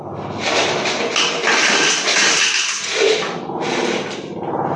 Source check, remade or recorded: recorded